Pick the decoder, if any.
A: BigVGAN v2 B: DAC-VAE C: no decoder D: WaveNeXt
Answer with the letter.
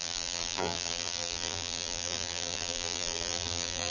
A